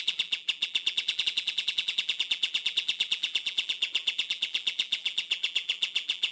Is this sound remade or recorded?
remade